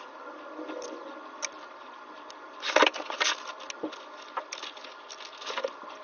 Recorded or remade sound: recorded